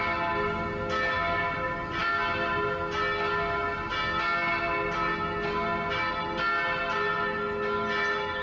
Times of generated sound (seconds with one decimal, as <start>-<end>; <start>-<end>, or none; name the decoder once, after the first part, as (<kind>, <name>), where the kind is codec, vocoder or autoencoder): none